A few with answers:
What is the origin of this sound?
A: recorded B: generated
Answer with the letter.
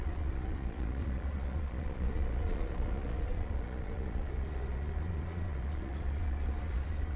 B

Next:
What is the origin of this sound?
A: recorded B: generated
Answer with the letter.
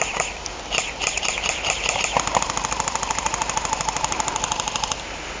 A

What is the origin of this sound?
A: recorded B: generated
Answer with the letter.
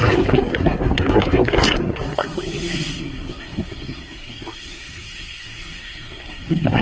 B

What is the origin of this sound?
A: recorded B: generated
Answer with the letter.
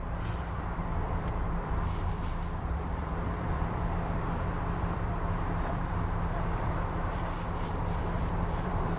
B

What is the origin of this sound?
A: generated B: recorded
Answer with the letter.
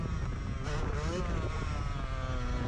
B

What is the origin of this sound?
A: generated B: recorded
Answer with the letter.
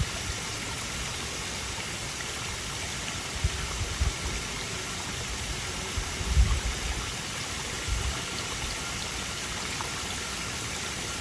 B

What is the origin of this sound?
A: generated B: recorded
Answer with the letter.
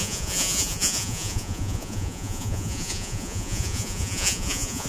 A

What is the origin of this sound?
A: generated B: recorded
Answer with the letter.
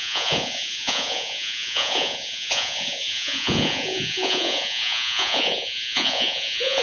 A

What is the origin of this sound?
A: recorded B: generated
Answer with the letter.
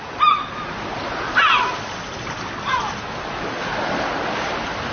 A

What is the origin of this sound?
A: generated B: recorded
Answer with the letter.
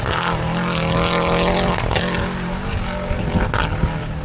B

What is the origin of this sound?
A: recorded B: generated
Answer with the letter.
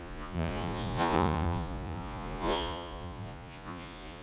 B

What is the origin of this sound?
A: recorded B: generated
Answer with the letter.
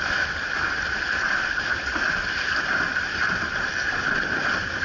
A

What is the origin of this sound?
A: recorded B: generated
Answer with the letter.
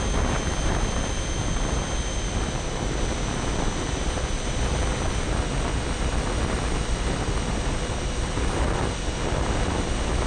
A